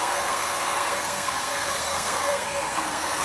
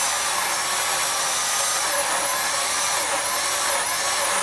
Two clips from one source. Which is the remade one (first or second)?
first